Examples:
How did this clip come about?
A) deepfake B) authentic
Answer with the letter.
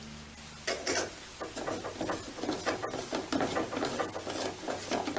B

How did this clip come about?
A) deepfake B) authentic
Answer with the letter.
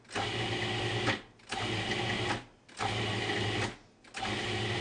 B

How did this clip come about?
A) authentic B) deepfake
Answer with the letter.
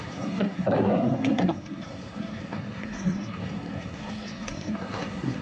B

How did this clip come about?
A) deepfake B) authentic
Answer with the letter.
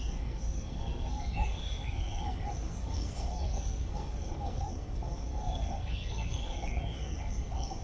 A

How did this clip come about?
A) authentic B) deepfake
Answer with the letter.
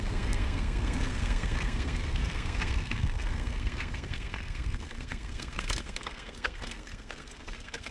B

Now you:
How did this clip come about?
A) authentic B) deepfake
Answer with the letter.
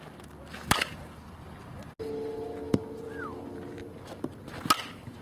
A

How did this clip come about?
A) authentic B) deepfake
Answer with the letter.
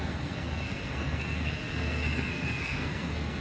B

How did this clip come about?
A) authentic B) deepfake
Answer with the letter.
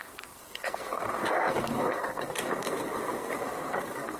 B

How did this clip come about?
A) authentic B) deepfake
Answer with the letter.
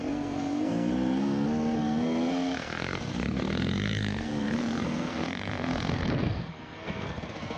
B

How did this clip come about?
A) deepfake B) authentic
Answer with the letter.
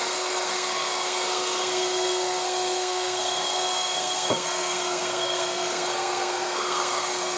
A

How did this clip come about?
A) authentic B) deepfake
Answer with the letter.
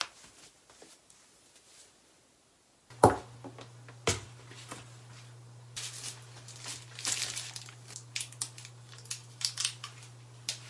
A